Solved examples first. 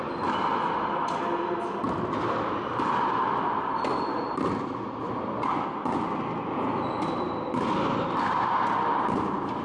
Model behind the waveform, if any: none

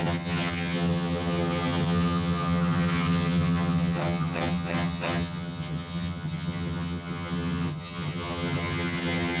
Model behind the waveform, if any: vocoder, HiFi-GAN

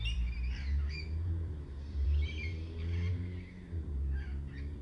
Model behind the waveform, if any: vocoder, BigVGAN v2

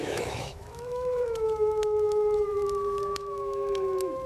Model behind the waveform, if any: autoencoder, DAC-VAE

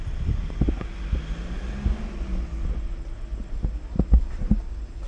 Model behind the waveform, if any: none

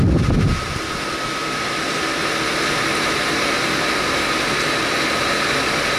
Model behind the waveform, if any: none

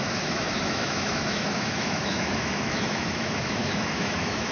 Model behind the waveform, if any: autoencoder, DAC-VAE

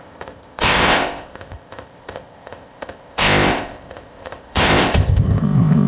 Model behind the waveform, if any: codec, ZipCodec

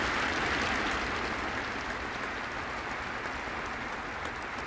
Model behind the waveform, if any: none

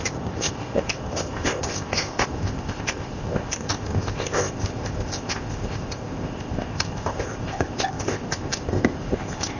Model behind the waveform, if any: codec, ZipCodec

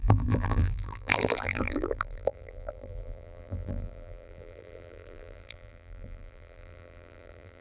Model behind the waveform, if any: vocoder, BigVGAN v2